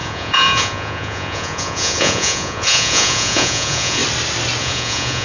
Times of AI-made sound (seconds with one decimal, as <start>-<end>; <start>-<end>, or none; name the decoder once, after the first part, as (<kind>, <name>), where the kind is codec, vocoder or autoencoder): 0.0-4.0 (vocoder, Vocos); 4.6-5.2

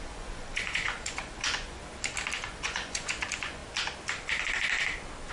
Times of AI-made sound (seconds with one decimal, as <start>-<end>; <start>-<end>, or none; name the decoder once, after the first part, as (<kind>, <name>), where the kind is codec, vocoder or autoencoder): 0.0-1.8 (vocoder, Vocos); 2.4-3.6

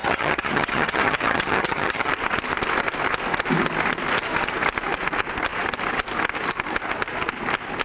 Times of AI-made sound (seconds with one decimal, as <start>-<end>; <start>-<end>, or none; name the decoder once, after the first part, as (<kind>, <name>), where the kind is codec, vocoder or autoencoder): 0.0-2.1 (vocoder, HiFi-GAN)

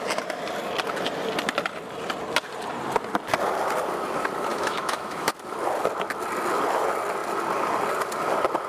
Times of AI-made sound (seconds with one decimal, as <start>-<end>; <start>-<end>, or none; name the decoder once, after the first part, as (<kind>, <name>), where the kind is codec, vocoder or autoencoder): 4.5-5.3 (autoencoder, DAC-VAE)

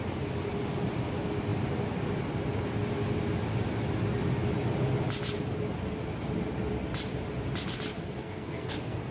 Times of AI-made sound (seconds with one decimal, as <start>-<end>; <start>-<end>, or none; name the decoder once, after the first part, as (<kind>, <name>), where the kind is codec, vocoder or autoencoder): 7.9-9.1 (codec, SNAC)

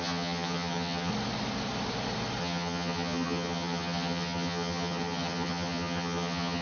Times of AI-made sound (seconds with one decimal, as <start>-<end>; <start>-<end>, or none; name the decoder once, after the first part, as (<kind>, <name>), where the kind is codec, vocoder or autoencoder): 0.0-1.1 (vocoder, HiFi-GAN); 2.4-6.6